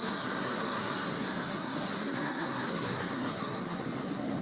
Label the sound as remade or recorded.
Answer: remade